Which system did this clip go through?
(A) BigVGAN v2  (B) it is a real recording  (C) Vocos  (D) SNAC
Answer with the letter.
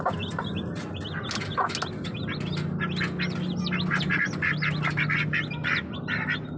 B